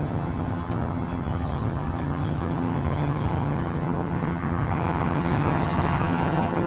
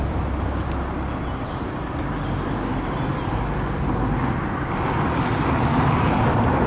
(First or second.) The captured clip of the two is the second